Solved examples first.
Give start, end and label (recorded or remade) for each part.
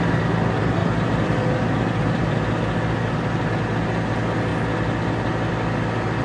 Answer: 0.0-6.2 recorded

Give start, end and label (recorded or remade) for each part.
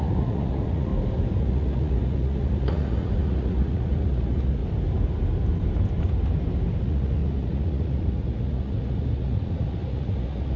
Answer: 0.0-0.9 remade; 0.9-1.4 recorded; 1.4-4.6 remade; 4.6-6.8 recorded; 6.8-10.6 remade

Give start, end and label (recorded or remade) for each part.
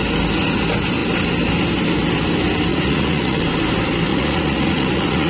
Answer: 0.0-2.7 recorded; 2.7-3.4 remade; 3.4-4.1 recorded; 4.1-5.3 remade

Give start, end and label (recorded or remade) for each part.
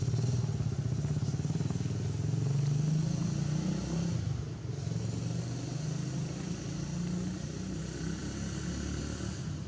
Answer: 0.0-9.7 recorded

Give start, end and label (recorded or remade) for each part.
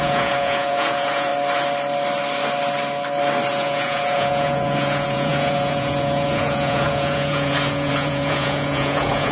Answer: 0.0-1.3 remade; 1.3-3.5 recorded; 3.5-9.3 remade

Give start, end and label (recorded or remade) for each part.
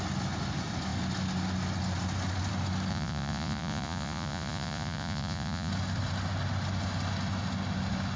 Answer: 0.0-2.9 recorded; 2.9-5.7 remade; 5.7-8.2 recorded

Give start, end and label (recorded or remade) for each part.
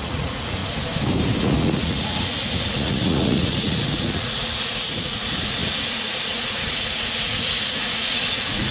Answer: 0.0-0.6 remade; 0.6-1.4 recorded; 1.4-8.7 remade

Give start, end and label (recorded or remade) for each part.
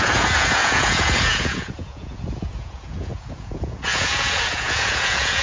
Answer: 0.0-5.4 remade